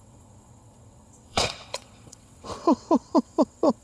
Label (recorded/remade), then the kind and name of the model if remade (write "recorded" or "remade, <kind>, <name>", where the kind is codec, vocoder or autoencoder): remade, vocoder, WaveNeXt